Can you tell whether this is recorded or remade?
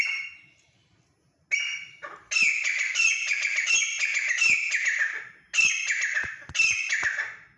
recorded